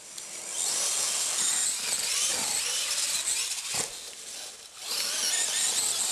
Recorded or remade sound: recorded